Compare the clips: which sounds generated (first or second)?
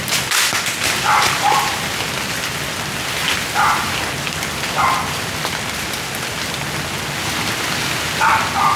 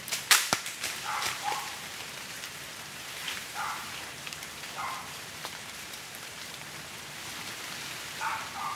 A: second